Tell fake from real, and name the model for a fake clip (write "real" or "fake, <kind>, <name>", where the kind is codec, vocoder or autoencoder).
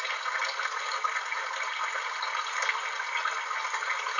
real